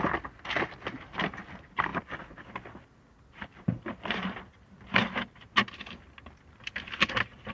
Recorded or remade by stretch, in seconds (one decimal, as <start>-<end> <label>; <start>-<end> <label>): 0.0-7.5 recorded